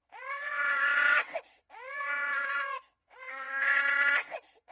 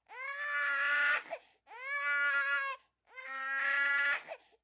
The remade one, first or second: first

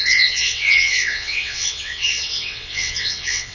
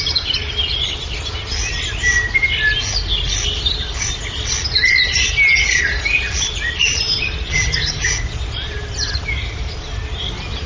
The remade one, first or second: first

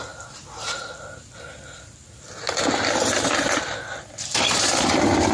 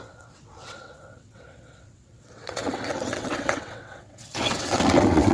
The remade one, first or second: second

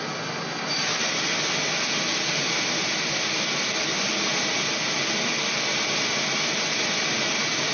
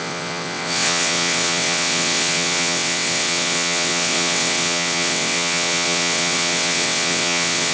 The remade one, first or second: second